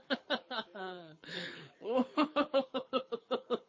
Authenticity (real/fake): fake